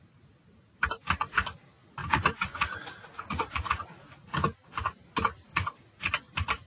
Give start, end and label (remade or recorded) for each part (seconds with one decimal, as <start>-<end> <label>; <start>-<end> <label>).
0.0-2.0 recorded; 2.0-4.1 remade; 4.1-5.5 recorded; 5.5-6.1 remade; 6.1-6.7 recorded